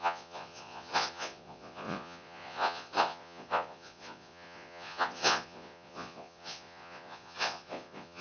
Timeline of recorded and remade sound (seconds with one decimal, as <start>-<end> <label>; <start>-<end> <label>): 0.0-8.2 remade